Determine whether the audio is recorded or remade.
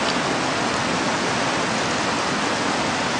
recorded